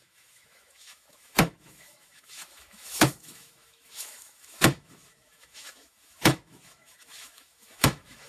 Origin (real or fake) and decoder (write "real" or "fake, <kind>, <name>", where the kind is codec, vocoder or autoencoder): fake, autoencoder, DAC-VAE